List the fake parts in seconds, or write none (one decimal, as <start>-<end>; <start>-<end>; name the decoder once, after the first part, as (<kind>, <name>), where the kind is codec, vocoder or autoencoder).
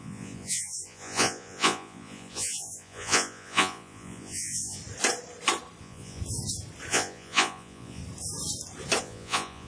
0.0-4.8 (vocoder, Vocos); 5.8-6.2; 6.9-8.0; 9.0-9.7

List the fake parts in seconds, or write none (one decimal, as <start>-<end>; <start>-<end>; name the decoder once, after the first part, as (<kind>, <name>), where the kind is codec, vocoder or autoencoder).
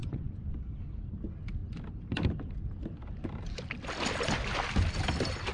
0.0-0.5 (vocoder, Vocos)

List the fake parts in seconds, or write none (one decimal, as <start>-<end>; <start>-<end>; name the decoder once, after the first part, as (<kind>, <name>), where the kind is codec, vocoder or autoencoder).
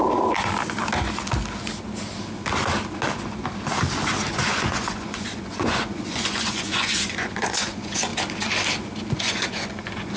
4.3-8.1 (vocoder, Vocos); 9.2-10.2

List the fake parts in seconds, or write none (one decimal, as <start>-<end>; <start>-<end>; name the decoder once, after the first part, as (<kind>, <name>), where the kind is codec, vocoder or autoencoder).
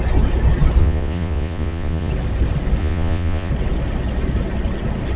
0.8-2.1 (vocoder, Vocos); 2.8-3.5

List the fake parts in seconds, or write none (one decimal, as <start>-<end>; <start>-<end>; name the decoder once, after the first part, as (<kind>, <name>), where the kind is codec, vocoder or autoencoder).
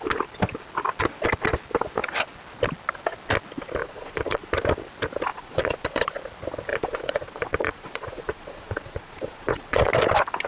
3.8-4.5 (vocoder, Vocos); 5.3-6.2; 6.7-9.9